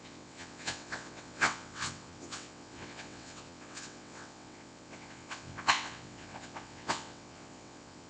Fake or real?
fake